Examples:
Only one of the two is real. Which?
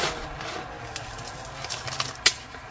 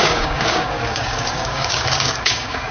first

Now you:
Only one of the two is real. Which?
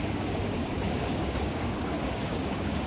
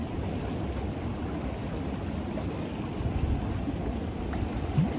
second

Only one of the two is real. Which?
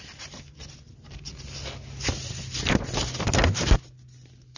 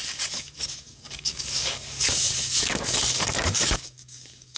first